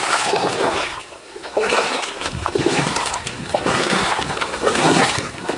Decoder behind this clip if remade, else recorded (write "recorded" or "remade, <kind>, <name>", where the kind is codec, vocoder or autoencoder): remade, codec, SNAC